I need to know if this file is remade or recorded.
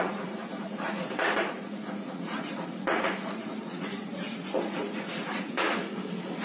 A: remade